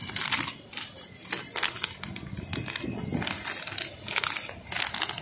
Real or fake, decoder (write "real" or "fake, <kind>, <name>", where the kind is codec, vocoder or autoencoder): real